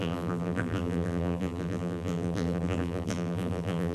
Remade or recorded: remade